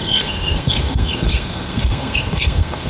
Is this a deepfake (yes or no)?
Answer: yes